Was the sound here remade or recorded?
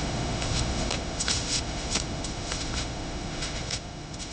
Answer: remade